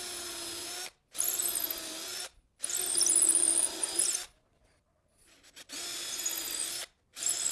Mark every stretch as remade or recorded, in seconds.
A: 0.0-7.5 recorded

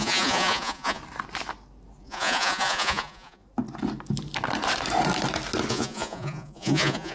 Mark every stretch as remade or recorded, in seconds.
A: 0.0-1.0 remade; 1.0-2.0 recorded; 2.0-3.4 remade; 3.4-5.7 recorded; 5.7-7.1 remade

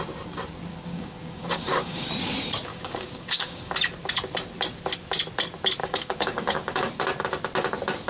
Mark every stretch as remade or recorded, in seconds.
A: 0.0-0.9 recorded; 0.9-2.1 remade; 2.1-2.7 recorded; 2.7-3.7 remade; 3.7-5.8 recorded; 5.8-6.9 remade; 6.9-8.1 recorded

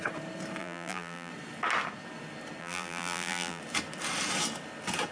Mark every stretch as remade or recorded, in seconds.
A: 0.0-0.6 recorded; 0.6-1.3 remade; 1.3-2.6 recorded; 2.6-3.6 remade; 3.6-5.1 recorded

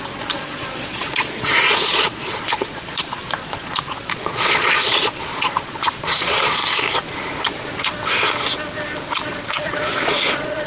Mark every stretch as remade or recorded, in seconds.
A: 0.0-6.6 remade; 6.6-9.3 recorded; 9.3-10.7 remade

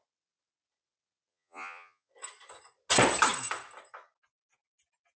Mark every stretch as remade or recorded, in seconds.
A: 0.0-1.3 recorded; 1.3-2.1 remade; 2.1-5.2 recorded

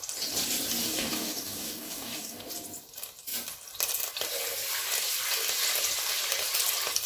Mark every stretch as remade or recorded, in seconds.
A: 0.0-0.8 recorded; 0.8-2.5 remade; 2.5-7.1 recorded